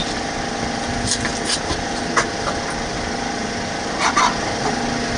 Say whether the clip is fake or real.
real